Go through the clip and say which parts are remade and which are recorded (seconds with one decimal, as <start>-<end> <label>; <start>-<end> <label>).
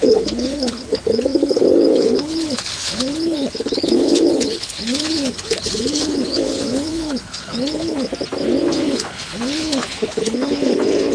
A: 0.0-8.1 remade; 8.1-8.6 recorded; 8.6-11.1 remade